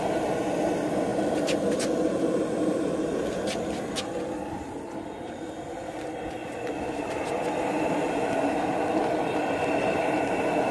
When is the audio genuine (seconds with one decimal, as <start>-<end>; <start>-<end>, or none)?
0.0-10.7

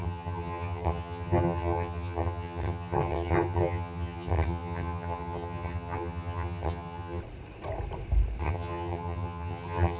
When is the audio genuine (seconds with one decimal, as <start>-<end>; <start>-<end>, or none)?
7.2-8.4

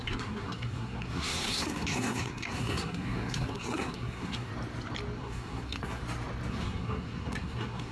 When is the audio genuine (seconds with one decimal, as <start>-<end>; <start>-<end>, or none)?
4.5-5.2; 6.0-6.5

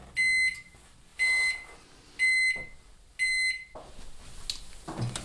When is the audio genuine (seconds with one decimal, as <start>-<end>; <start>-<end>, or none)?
0.0-5.2